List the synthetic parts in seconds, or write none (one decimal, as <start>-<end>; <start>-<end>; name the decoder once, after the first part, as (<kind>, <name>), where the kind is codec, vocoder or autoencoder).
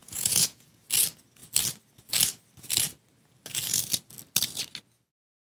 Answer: 0.0-0.8 (vocoder, Vocos)